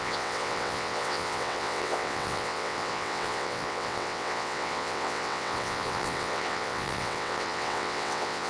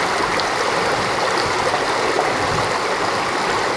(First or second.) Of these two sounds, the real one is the second